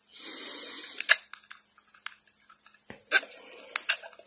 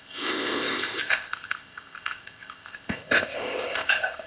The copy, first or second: second